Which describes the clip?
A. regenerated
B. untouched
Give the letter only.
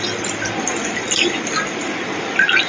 B